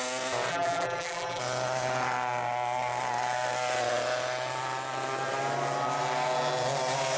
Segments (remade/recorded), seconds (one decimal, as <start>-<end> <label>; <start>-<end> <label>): 0.0-0.5 recorded; 0.5-1.4 remade; 1.4-7.2 recorded